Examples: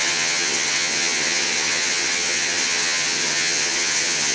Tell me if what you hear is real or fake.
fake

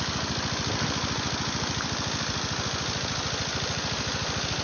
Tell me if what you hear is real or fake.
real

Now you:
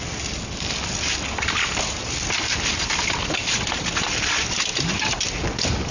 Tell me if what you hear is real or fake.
real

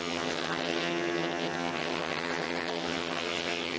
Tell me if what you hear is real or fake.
fake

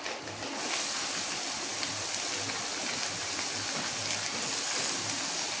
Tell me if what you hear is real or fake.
real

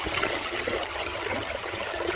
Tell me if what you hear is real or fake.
fake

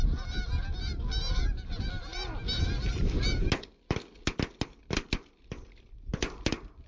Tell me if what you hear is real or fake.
real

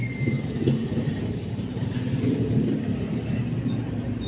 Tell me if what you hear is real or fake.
real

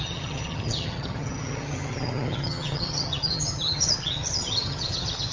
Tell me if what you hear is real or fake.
fake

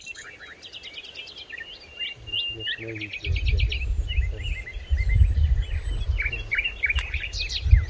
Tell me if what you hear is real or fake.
real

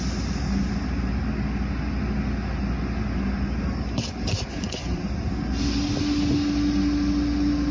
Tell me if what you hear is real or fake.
real